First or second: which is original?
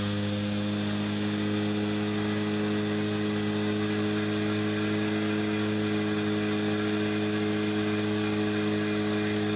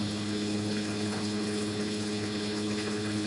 first